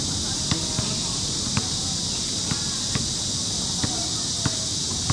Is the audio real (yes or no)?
yes